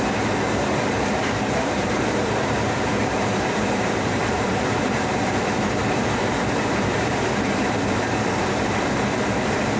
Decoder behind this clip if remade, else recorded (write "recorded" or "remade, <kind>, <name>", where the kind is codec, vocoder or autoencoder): remade, vocoder, BigVGAN v2